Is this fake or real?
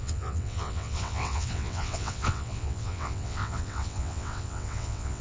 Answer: fake